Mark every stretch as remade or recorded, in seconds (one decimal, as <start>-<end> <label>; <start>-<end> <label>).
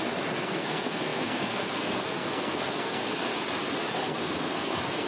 0.0-3.3 remade; 3.3-3.9 recorded; 3.9-5.1 remade